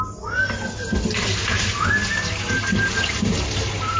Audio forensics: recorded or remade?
recorded